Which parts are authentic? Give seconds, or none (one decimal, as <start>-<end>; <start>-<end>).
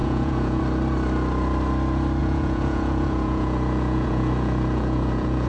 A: 0.6-2.2